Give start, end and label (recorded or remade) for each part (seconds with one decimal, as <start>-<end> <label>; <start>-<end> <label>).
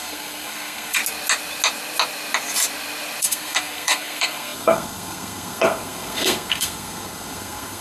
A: 0.0-1.0 remade; 1.0-3.2 recorded; 3.2-7.8 remade